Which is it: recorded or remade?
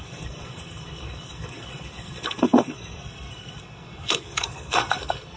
remade